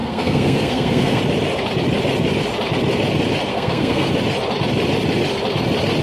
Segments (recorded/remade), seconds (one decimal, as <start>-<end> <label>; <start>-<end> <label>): 0.0-1.2 remade; 1.2-3.5 recorded; 3.5-4.1 remade; 4.1-6.0 recorded